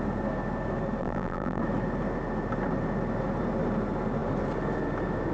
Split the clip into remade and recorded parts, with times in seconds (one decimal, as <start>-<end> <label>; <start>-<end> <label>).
0.0-1.0 recorded; 1.0-1.6 remade; 1.6-5.3 recorded